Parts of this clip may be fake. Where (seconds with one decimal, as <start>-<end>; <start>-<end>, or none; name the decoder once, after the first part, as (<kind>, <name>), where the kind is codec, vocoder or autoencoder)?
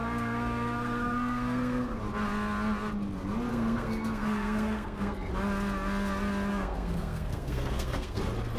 0.0-2.0 (codec, SNAC); 3.5-5.3; 6.5-8.2